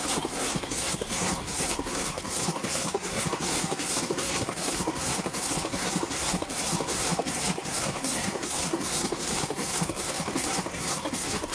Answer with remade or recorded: remade